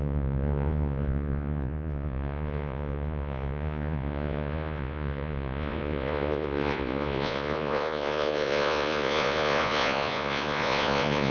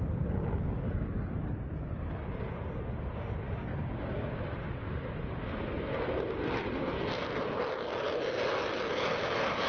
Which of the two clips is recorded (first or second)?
second